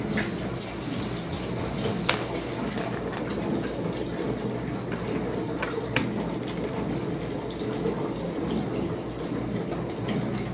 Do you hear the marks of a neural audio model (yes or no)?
no